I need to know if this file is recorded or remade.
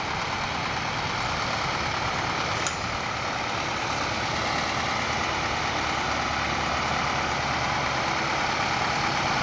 recorded